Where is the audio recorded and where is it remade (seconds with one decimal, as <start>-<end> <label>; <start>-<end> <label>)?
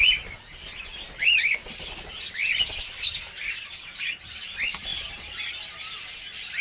0.0-4.9 remade; 4.9-5.5 recorded; 5.5-6.6 remade